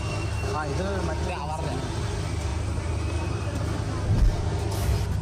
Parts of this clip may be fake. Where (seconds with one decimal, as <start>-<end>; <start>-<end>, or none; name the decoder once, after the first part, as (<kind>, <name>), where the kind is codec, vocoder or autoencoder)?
2.5-3.6 (vocoder, BigVGAN v2)